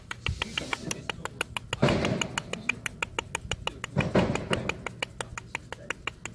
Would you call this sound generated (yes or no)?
no